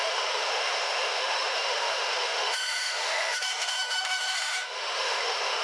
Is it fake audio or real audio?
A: fake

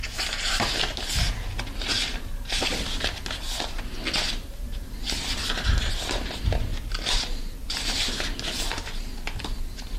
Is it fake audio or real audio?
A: real